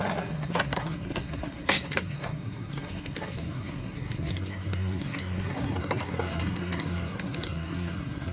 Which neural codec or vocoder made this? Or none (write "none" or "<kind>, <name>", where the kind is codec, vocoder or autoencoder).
codec, SNAC